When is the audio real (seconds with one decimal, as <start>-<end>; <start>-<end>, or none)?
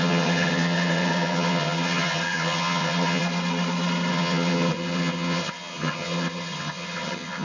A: 3.2-4.1